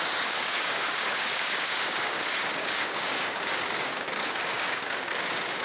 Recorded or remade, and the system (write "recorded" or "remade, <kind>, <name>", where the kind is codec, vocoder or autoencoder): remade, codec, DAC